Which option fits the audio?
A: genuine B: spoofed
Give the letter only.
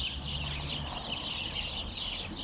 A